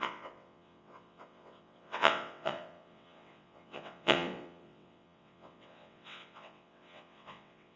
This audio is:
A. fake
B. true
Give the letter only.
A